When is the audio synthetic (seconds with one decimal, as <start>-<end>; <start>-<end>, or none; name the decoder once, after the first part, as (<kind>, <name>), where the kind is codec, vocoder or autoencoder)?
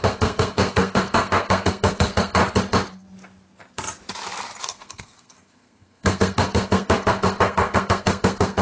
0.0-2.4 (codec, SNAC); 4.6-8.6